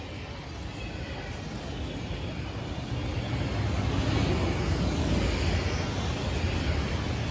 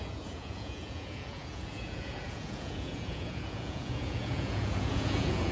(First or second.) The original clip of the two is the first